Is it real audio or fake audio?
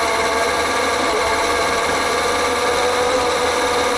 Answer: real